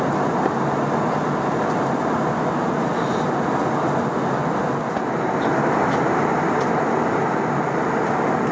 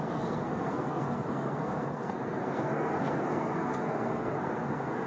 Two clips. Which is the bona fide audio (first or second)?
first